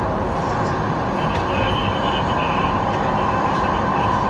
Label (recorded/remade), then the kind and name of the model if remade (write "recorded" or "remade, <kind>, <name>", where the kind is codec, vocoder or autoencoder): recorded